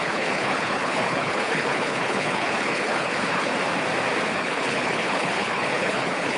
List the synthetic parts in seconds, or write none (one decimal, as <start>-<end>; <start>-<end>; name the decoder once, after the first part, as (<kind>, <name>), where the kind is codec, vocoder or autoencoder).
0.0-3.5 (codec, HILCodec); 4.3-6.4